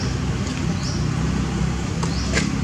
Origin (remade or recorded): recorded